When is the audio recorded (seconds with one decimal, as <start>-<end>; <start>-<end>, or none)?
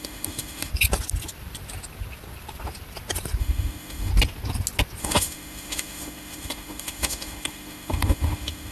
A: 0.7-3.4; 4.1-5.0